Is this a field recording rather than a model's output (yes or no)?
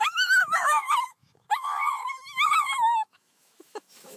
no